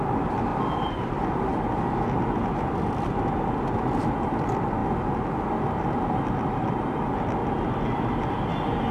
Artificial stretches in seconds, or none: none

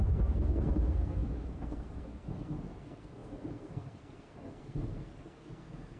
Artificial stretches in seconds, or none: 0.0-6.0

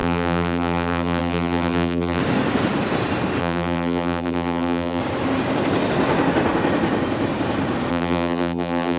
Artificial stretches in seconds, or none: 0.0-2.2; 3.4-5.0; 7.9-9.0